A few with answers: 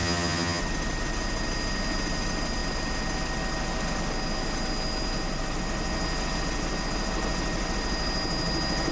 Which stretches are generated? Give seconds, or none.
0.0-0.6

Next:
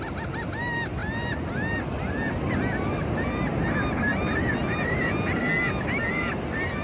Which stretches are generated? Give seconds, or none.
none